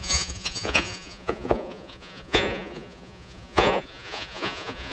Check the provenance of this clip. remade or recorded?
remade